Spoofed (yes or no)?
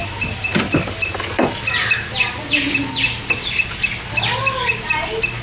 no